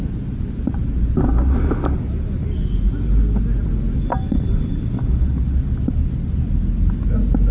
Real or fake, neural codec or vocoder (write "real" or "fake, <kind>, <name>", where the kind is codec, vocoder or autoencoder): real